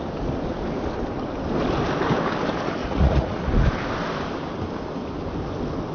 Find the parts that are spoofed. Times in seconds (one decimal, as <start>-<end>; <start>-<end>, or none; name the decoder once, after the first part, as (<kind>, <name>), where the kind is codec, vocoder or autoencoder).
2.8-3.5 (vocoder, Vocos)